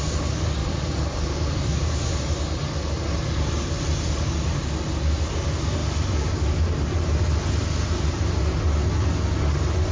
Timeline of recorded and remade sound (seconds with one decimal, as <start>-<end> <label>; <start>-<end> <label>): 0.0-0.6 recorded; 0.6-2.3 remade; 2.3-5.8 recorded; 5.8-6.4 remade; 6.4-7.6 recorded; 7.6-8.4 remade; 8.4-9.9 recorded